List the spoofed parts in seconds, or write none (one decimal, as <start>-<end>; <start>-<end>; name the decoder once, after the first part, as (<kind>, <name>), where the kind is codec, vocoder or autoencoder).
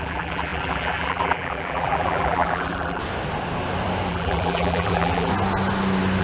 0.0-3.0 (vocoder, BigVGAN v2); 4.1-5.3